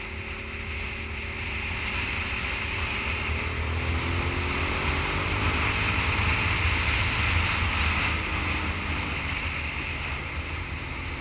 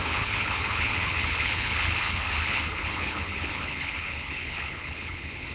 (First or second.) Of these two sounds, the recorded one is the first